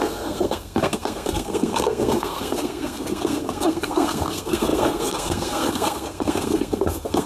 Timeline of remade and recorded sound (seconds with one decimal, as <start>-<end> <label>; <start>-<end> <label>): 0.0-7.3 remade